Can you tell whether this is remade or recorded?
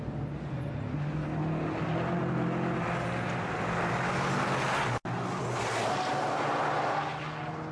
recorded